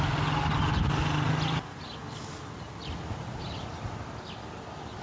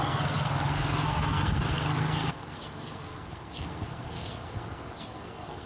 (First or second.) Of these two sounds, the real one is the first